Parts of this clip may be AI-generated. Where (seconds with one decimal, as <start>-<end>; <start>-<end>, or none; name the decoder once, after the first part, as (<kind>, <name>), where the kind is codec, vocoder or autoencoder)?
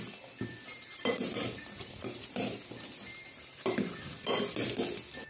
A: 0.7-3.9 (vocoder, BigVGAN v2)